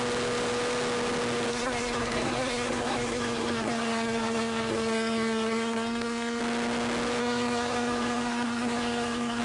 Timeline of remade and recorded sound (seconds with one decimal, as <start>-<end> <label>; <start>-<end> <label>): 0.0-1.5 recorded; 1.5-6.4 remade; 6.4-7.2 recorded; 7.2-9.4 remade